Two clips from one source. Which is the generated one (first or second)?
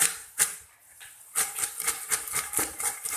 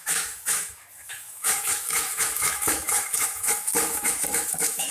second